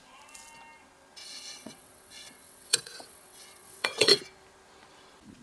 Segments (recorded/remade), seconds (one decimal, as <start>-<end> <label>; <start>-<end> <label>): 0.0-1.2 recorded; 1.2-4.2 remade; 4.2-5.4 recorded